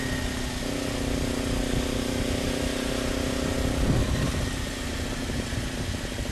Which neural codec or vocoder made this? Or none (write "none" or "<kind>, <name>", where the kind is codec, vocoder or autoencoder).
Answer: none